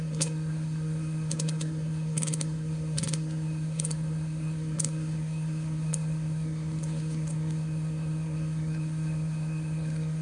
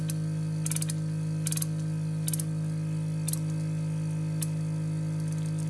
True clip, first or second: second